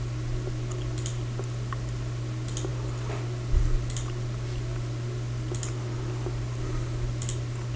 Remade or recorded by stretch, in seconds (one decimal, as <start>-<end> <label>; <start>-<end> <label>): 0.0-7.8 recorded